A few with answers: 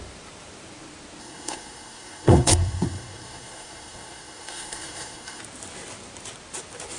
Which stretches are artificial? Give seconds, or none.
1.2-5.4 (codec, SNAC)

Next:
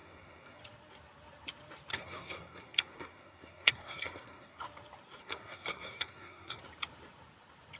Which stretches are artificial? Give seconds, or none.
0.0-0.6 (codec, SNAC); 1.9-4.6; 5.2-6.6

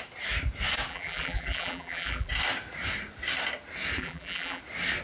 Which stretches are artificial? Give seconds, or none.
0.9-2.3 (vocoder, BigVGAN v2); 4.0-4.6

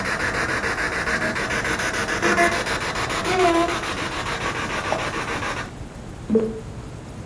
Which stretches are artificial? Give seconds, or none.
3.2-3.9 (codec, DAC)

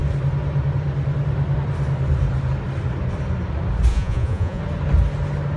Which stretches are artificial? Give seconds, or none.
3.9-4.6 (vocoder, Vocos)

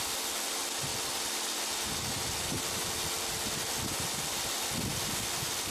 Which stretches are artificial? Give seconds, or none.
none

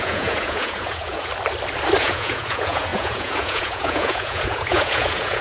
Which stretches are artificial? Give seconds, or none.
0.0-1.3 (vocoder, Vocos); 2.0-5.4